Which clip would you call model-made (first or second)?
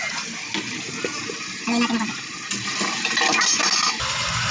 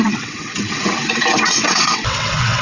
second